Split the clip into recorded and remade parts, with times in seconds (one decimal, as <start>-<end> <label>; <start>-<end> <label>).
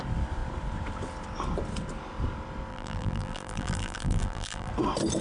0.0-2.7 recorded; 2.7-4.7 remade; 4.7-5.2 recorded